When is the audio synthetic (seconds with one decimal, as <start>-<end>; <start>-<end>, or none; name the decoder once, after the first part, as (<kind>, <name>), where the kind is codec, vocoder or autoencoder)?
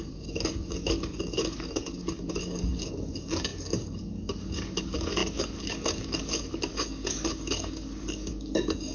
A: 0.0-8.9 (codec, DAC)